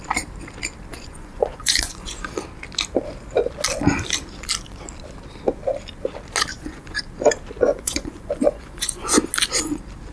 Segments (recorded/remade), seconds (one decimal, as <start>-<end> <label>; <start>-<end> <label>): 0.0-0.9 recorded; 0.9-2.3 remade; 2.3-6.5 recorded; 6.5-7.0 remade; 7.0-7.7 recorded; 7.7-9.2 remade; 9.2-10.1 recorded